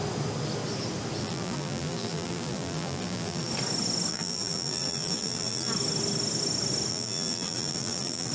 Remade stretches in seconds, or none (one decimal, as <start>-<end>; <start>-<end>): 1.2-3.5; 4.1-5.7; 6.9-8.3

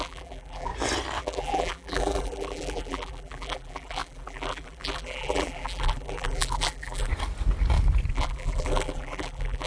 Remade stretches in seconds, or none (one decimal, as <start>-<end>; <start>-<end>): 0.0-0.7; 1.2-7.1; 8.1-9.7

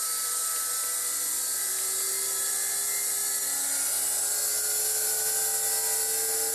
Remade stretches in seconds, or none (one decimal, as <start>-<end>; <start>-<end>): none

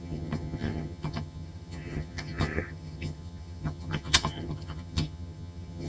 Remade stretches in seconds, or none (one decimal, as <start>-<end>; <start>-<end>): 0.0-5.9

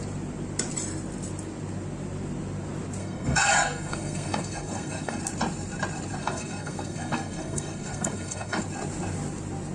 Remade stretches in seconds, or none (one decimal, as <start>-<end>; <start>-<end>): 3.0-5.2; 6.2-8.6